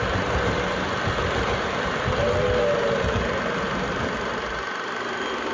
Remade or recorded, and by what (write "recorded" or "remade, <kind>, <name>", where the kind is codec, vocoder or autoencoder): recorded